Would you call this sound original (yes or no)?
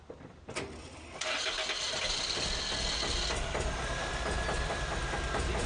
yes